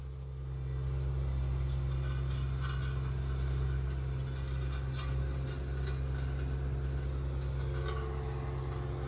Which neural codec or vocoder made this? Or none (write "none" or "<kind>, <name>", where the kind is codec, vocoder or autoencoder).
none